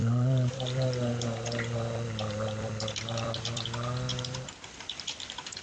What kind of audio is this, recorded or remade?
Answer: remade